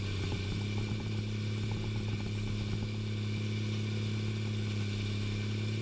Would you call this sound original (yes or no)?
yes